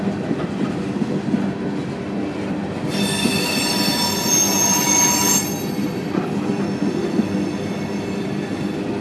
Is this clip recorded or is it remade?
recorded